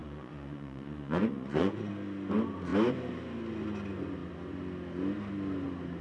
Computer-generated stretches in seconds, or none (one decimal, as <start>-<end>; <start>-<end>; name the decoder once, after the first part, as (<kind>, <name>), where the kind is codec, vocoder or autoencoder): 0.0-1.9 (vocoder, Vocos)